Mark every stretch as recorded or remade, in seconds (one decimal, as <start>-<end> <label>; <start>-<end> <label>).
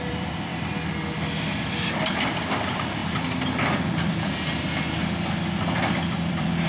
0.0-0.5 remade; 0.5-1.6 recorded; 1.6-3.0 remade; 3.0-6.3 recorded; 6.3-6.7 remade